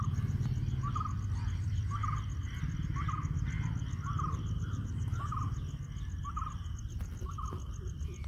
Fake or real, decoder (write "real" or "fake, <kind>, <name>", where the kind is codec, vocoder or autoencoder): real